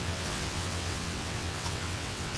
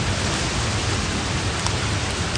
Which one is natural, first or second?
second